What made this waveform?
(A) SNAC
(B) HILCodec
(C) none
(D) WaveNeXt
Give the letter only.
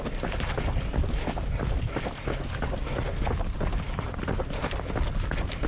C